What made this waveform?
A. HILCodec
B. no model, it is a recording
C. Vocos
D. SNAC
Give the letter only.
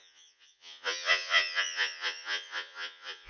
C